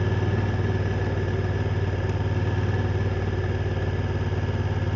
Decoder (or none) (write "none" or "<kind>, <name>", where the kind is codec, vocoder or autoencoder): none